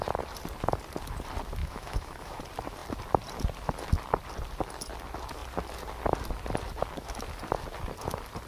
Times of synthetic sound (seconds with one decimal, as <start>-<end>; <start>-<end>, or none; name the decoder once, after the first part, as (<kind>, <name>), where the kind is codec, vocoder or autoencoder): 1.6-2.4 (autoencoder, DAC-VAE)